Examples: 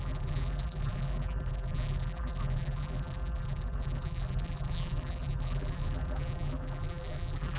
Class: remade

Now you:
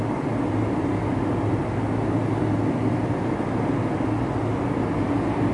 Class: recorded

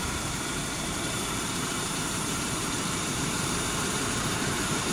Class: remade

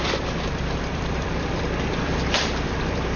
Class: remade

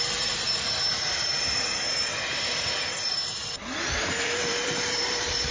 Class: remade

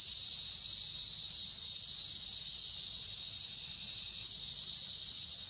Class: recorded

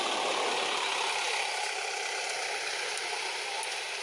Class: remade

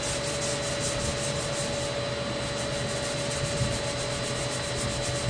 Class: recorded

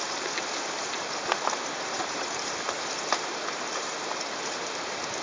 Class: remade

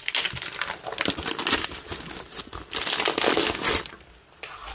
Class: recorded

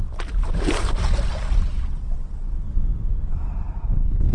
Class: remade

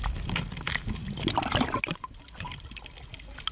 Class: recorded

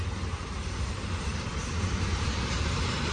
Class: remade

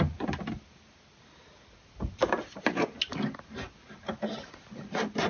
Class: recorded